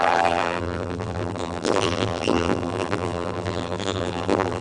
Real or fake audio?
fake